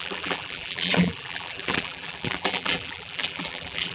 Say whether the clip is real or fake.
fake